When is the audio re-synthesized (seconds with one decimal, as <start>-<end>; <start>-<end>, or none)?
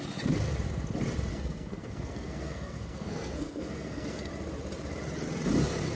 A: 1.3-4.3